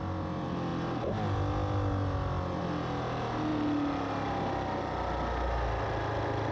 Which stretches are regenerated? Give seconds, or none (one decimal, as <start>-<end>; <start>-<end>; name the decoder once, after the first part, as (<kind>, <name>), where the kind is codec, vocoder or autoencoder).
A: none